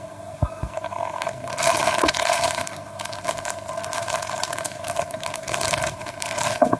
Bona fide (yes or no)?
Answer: no